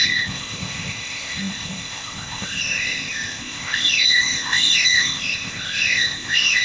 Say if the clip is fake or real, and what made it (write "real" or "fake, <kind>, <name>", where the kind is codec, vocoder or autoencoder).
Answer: fake, codec, ZipCodec